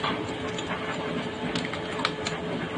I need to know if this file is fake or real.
real